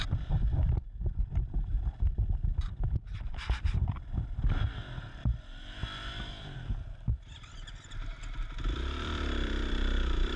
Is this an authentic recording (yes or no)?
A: no